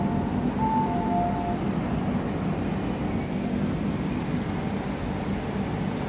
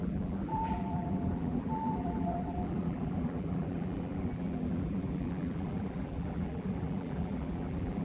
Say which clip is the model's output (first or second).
second